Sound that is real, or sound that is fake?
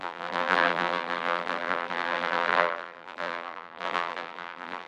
fake